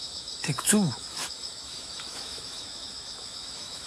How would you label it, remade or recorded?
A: remade